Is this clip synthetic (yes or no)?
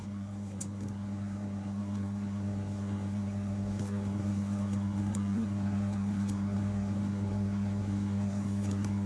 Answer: yes